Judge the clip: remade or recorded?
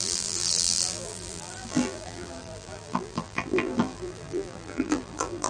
remade